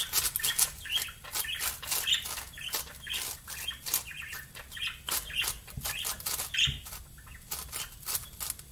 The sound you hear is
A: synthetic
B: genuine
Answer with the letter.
B